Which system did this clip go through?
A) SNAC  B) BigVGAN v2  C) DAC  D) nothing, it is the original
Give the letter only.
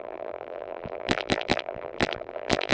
B